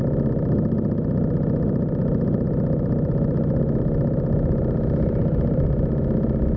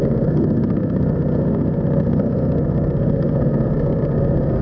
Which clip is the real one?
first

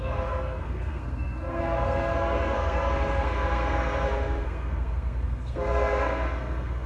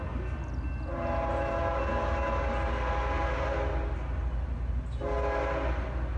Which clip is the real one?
second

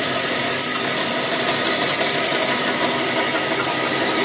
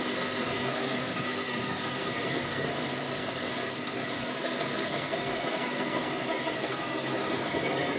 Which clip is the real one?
first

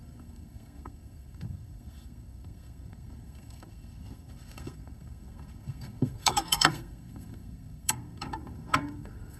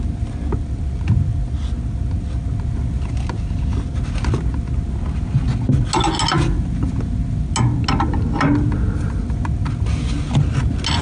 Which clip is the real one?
second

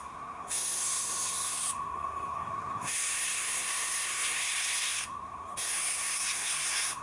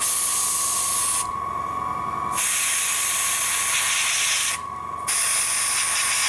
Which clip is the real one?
second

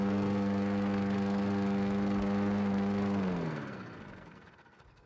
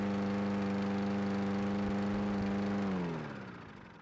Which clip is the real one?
second